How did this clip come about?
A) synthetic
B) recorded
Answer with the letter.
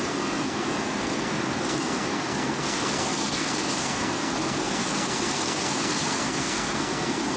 A